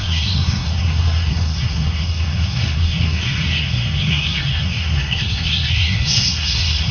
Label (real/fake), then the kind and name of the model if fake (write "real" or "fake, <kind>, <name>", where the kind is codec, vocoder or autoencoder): fake, codec, SNAC